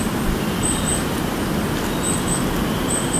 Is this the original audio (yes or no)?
yes